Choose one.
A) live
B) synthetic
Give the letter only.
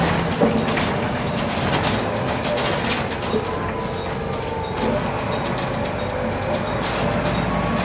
A